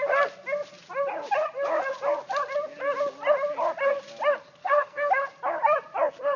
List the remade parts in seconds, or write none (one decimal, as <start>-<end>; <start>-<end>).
4.6-5.1